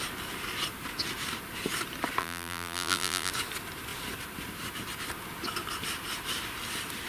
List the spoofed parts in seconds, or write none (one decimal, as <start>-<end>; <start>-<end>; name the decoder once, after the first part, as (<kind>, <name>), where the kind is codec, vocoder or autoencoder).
2.2-3.3 (vocoder, BigVGAN v2)